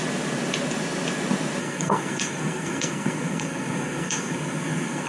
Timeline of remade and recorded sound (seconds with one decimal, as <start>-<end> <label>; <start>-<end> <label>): 0.0-1.6 recorded; 1.6-5.1 remade